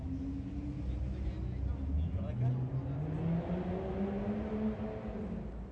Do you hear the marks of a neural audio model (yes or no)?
no